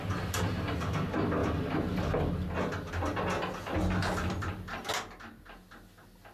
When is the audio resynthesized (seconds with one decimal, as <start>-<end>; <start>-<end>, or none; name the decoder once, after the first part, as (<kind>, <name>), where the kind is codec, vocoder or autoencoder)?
none